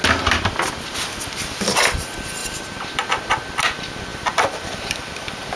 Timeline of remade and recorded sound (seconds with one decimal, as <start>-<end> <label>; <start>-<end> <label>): 0.0-2.4 recorded; 2.4-3.2 remade; 3.2-4.1 recorded; 4.1-5.6 remade